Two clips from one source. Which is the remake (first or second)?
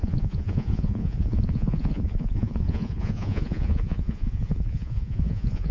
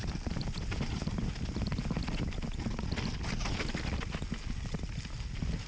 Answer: first